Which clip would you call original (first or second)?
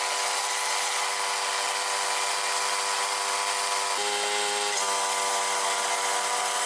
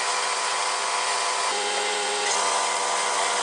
first